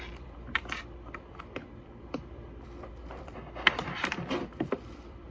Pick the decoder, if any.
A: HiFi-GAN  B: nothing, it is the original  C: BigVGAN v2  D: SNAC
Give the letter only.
C